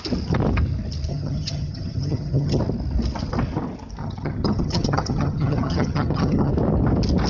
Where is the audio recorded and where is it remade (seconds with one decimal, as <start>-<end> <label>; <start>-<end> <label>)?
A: 0.0-1.1 recorded; 1.1-2.6 remade; 2.6-4.0 recorded; 4.0-6.5 remade; 6.5-7.3 recorded